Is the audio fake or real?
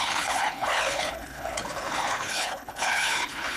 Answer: fake